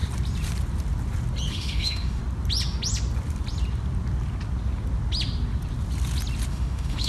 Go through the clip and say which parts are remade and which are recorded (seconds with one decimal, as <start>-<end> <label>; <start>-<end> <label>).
0.0-1.5 recorded; 1.5-2.2 remade; 2.2-6.5 recorded; 6.5-7.1 remade